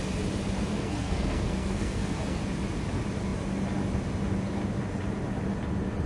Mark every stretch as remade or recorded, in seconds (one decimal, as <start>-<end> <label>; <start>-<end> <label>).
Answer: 0.0-0.7 recorded; 0.7-2.4 remade; 2.4-6.1 recorded